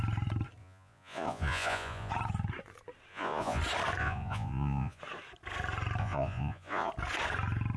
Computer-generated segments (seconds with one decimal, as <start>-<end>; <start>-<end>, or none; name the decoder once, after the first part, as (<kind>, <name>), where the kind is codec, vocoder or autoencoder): 0.6-2.1 (vocoder, Vocos); 3.1-3.6; 4.0-5.0; 6.0-6.9